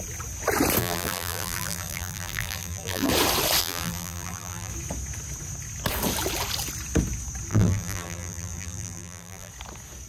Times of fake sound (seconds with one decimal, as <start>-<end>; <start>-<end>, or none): 0.8-3.1; 3.6-4.7; 7.5-9.5